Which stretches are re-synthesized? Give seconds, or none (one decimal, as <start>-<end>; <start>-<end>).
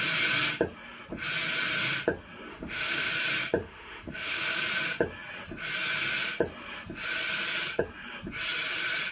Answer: 2.5-3.1; 3.6-4.4